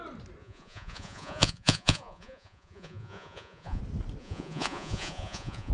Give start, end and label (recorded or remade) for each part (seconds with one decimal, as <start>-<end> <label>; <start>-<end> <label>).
0.0-0.4 recorded; 0.4-3.8 remade; 3.8-4.2 recorded; 4.2-5.7 remade